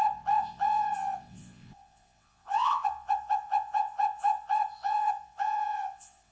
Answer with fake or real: fake